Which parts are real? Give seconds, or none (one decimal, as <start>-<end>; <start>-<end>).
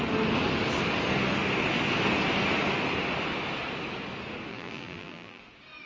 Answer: 0.0-4.5; 5.4-5.9